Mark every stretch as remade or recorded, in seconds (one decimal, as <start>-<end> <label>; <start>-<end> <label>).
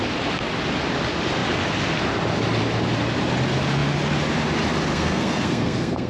0.0-4.9 recorded; 4.9-6.1 remade